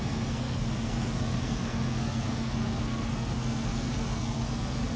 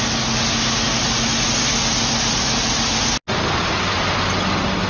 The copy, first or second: first